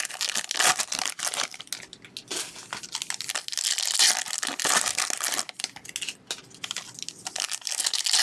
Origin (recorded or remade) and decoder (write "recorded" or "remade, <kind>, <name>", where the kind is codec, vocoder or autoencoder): recorded